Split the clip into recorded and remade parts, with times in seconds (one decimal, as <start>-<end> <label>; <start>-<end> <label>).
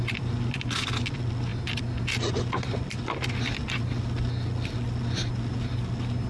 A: 0.0-6.3 recorded